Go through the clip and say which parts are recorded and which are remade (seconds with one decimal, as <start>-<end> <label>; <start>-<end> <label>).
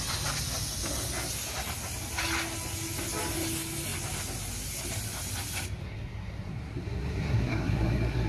0.0-5.8 recorded; 5.8-8.3 remade